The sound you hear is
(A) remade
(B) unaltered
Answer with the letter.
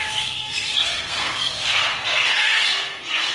A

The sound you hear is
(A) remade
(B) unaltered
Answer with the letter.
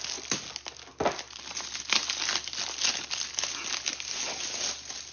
B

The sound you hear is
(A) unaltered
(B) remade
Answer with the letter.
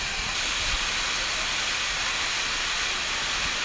A